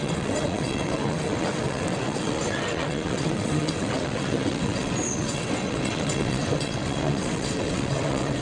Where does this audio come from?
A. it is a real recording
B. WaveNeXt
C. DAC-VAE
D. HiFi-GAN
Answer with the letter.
B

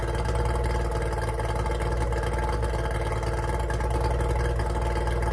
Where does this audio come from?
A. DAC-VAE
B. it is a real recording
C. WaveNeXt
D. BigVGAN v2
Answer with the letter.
B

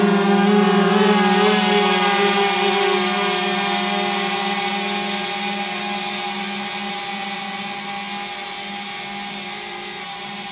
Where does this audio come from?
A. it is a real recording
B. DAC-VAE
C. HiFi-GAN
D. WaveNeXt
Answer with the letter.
A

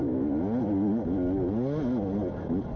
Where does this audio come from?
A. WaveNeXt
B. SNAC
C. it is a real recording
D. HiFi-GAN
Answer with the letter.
C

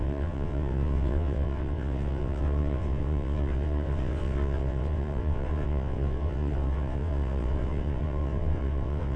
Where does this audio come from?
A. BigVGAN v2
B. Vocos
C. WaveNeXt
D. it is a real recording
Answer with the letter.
C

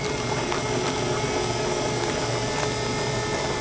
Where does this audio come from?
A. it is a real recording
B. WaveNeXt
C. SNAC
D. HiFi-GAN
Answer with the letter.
A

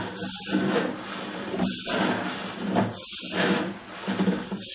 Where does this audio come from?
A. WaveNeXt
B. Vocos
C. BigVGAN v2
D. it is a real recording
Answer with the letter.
D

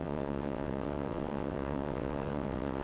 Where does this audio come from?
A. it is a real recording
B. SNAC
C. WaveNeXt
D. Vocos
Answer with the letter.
C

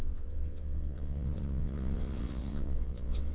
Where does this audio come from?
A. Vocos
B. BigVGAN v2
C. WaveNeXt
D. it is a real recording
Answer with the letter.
C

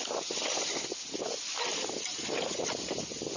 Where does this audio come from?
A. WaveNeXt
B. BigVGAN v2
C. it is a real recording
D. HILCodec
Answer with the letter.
C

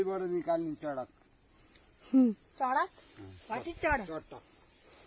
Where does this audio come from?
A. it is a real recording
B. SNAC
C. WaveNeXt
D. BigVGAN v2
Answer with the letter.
A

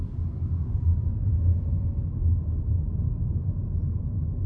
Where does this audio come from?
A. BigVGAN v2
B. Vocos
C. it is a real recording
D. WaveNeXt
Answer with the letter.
C